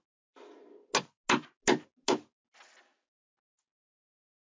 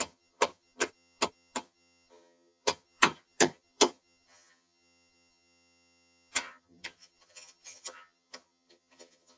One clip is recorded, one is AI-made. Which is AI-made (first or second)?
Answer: second